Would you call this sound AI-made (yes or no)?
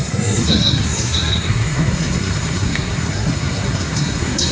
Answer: yes